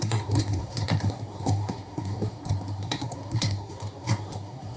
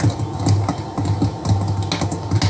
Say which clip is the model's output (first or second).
first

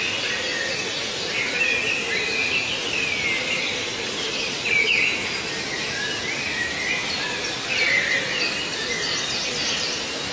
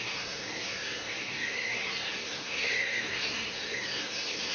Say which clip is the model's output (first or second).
second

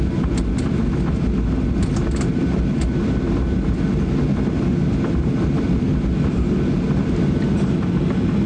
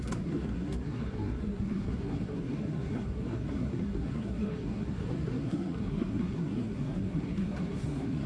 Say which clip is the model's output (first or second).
second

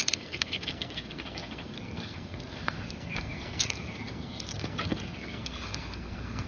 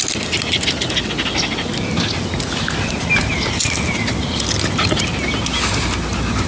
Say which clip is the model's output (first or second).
first